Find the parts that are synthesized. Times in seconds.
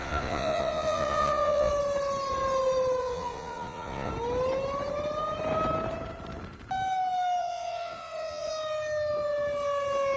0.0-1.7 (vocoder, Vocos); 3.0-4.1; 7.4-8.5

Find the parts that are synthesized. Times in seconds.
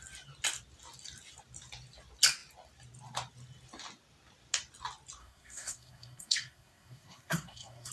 5.2-7.9 (codec, SNAC)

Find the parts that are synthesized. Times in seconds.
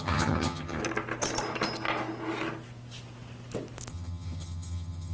0.0-0.8 (vocoder, HiFi-GAN); 3.9-5.1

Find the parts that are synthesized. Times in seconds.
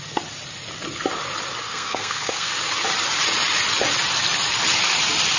1.6-2.5 (codec, SNAC)